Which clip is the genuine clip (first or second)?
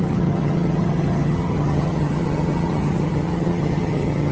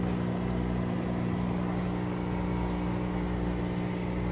second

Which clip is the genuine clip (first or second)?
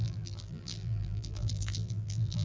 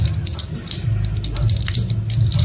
second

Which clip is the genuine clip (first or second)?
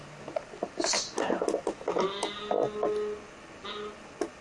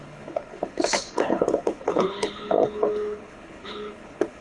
first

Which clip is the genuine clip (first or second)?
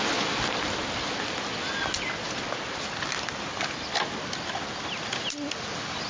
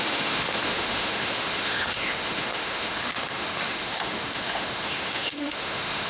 first